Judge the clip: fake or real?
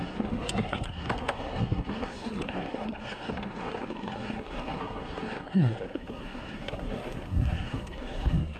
fake